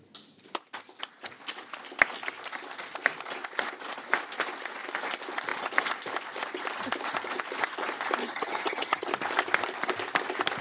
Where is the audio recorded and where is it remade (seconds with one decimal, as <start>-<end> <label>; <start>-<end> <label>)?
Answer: 0.0-8.2 recorded; 8.2-9.1 remade; 9.1-10.6 recorded